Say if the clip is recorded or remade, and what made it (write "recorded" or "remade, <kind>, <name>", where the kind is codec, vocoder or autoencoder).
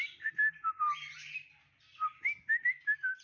recorded